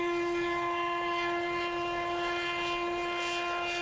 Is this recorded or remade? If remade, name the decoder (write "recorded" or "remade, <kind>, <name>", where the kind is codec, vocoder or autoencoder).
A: recorded